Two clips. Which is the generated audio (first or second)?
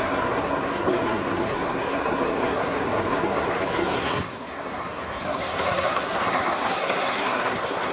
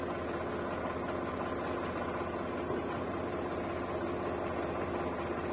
first